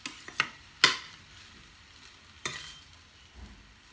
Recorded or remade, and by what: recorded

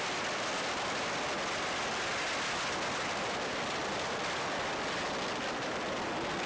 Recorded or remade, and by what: recorded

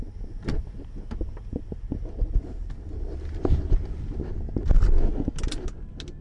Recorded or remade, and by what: recorded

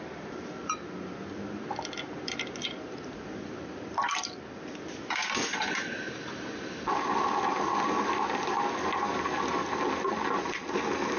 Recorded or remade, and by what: remade, vocoder, BigVGAN v2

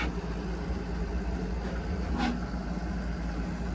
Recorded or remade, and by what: recorded